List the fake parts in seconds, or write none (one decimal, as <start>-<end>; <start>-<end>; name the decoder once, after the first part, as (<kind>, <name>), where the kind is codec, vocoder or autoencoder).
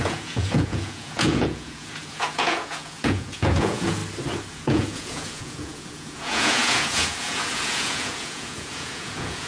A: 0.0-4.0 (vocoder, Vocos); 4.5-9.5